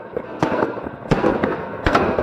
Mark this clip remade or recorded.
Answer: remade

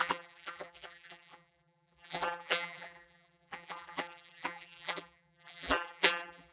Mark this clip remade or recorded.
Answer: remade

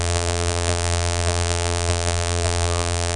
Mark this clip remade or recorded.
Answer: remade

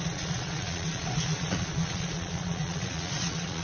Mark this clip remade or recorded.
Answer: remade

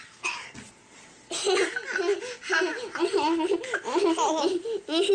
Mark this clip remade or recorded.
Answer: recorded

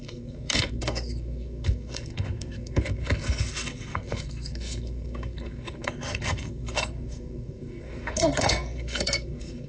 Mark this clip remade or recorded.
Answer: remade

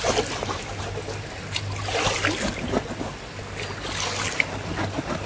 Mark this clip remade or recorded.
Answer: recorded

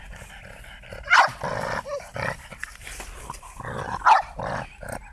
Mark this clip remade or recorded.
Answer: recorded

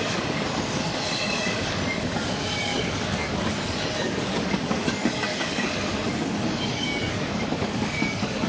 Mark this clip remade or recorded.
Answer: remade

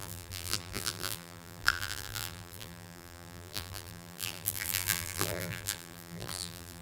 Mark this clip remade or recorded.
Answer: remade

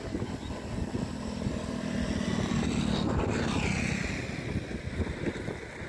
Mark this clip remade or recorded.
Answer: recorded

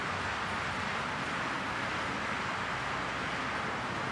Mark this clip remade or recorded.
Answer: recorded